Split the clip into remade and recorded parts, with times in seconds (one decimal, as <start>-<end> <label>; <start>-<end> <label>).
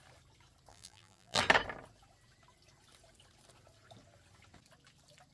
0.0-0.7 recorded; 0.7-1.4 remade; 1.4-5.3 recorded